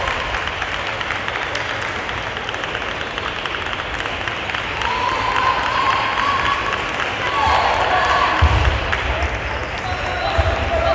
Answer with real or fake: real